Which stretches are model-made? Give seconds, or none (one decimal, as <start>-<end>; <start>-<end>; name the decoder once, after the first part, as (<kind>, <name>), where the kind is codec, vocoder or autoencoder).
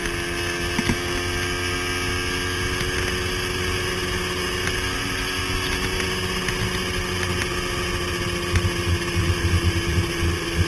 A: 5.0-5.4 (vocoder, BigVGAN v2); 9.2-10.7